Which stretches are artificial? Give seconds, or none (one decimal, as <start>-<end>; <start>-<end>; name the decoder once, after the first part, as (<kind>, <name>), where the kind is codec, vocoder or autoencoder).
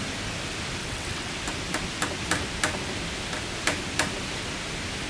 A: 0.8-1.3 (vocoder, WaveNeXt)